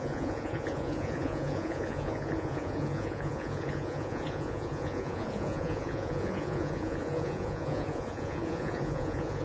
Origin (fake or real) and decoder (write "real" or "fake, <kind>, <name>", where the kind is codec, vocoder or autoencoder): fake, vocoder, Vocos